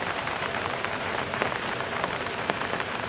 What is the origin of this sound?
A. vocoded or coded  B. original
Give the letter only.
A